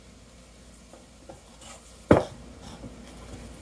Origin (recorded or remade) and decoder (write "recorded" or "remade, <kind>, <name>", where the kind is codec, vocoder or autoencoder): recorded